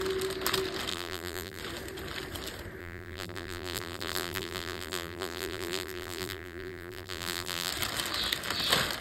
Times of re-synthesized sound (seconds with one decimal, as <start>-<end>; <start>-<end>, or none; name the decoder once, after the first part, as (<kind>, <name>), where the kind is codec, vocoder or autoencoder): 0.9-1.6 (vocoder, BigVGAN v2); 2.8-7.7